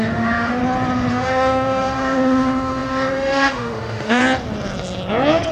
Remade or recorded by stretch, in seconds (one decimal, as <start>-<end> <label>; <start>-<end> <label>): 0.0-0.6 remade; 0.6-1.1 recorded; 1.1-4.2 remade; 4.2-5.5 recorded